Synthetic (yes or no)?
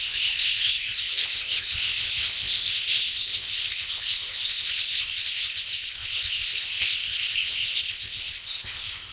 yes